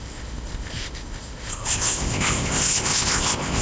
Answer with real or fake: fake